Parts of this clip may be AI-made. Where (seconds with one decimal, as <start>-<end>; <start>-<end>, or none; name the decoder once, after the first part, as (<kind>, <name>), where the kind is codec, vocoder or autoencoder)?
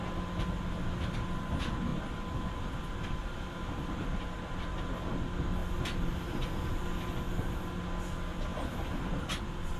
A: 1.9-2.6 (vocoder, BigVGAN v2); 5.6-6.8; 8.5-9.3